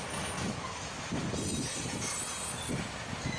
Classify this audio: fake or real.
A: real